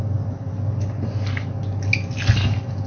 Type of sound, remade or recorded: recorded